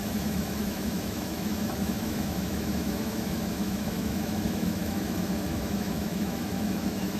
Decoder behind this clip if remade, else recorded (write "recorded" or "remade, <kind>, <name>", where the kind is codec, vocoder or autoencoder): remade, autoencoder, DAC-VAE